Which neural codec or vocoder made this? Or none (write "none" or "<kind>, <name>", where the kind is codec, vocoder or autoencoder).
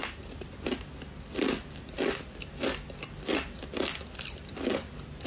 none